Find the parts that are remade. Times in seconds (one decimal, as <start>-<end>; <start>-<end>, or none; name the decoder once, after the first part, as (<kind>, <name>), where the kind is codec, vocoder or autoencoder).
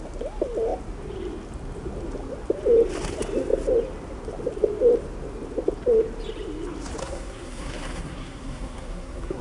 7.0-9.4 (codec, SNAC)